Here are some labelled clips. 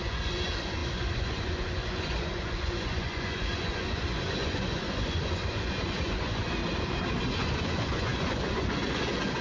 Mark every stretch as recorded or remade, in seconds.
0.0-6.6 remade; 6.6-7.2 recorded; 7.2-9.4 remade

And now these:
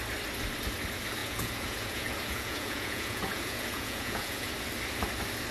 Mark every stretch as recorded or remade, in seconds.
0.0-1.2 recorded; 1.2-4.5 remade; 4.5-5.5 recorded

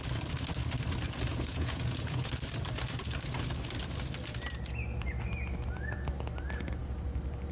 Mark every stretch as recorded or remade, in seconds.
0.0-1.3 recorded; 1.3-2.3 remade; 2.3-7.5 recorded

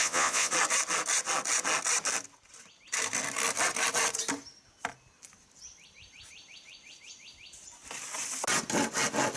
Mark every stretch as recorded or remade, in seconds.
0.0-0.5 remade; 0.5-9.4 recorded

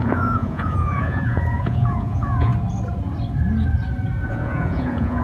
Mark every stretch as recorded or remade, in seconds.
0.0-2.5 remade; 2.5-4.3 recorded; 4.3-5.2 remade

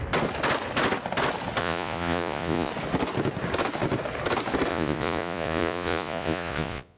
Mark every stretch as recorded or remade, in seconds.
0.0-1.6 recorded; 1.6-2.7 remade; 2.7-4.7 recorded; 4.7-7.0 remade